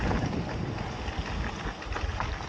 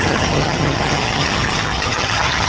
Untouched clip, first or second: first